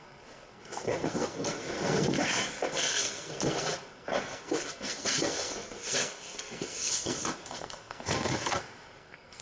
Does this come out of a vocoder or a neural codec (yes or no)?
yes